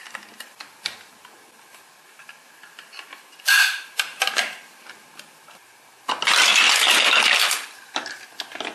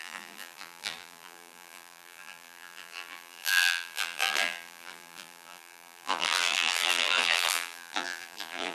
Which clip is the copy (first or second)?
second